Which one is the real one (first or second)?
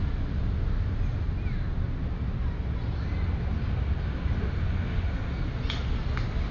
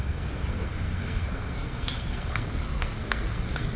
first